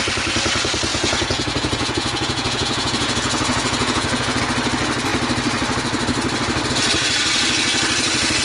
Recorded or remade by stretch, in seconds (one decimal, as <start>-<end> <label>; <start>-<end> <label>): 0.0-0.9 recorded; 0.9-4.4 remade; 4.4-8.4 recorded